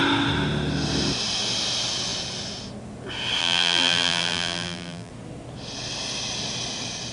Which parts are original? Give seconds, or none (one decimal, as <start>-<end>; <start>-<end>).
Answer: 0.0-3.4; 5.1-7.1